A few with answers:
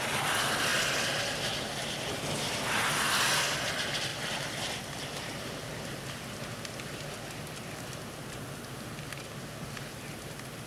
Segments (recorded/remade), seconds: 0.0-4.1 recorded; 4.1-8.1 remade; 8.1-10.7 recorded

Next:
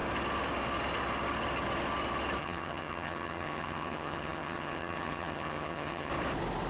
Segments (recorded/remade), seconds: 0.0-2.4 recorded; 2.4-6.1 remade; 6.1-6.7 recorded

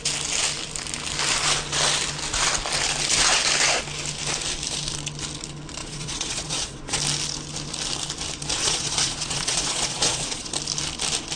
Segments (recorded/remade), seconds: 0.0-5.8 recorded; 5.8-7.0 remade; 7.0-8.6 recorded; 8.6-10.5 remade; 10.5-11.4 recorded

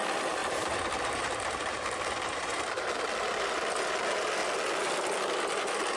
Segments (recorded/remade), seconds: 0.0-0.4 recorded; 0.4-2.9 remade; 2.9-6.0 recorded

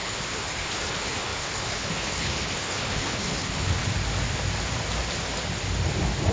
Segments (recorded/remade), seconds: 0.0-3.8 remade; 3.8-6.3 recorded

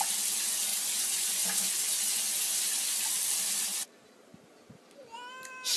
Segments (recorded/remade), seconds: 0.0-0.7 recorded; 0.7-2.6 remade; 2.6-5.8 recorded

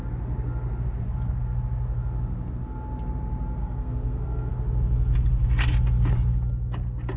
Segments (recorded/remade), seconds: 0.0-3.6 recorded; 3.6-4.5 remade; 4.5-7.2 recorded

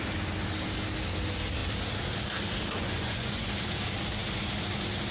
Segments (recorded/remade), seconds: 0.0-2.8 recorded; 2.8-3.5 remade; 3.5-5.1 recorded